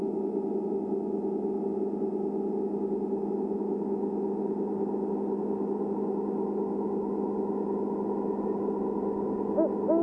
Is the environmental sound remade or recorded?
recorded